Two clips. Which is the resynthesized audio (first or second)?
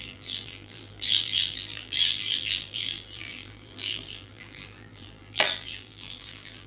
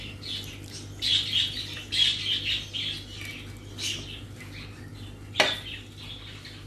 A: first